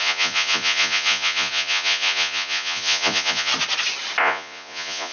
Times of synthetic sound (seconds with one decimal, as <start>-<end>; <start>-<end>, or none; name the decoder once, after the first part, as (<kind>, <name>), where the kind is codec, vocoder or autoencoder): 0.0-3.5 (vocoder, Vocos); 4.2-5.1